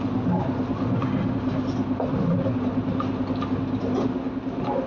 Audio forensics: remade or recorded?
recorded